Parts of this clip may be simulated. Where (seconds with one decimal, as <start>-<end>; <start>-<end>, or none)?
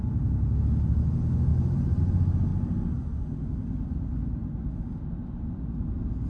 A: 1.5-2.0